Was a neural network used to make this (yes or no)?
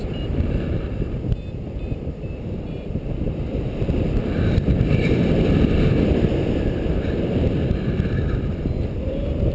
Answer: yes